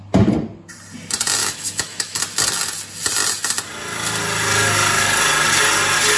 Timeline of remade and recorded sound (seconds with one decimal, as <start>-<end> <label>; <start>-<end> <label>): 0.0-1.4 recorded; 1.4-2.2 remade; 2.2-6.2 recorded